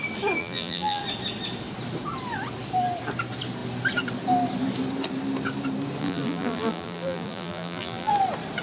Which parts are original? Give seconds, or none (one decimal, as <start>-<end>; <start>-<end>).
0.0-0.4; 1.0-6.0; 8.1-8.6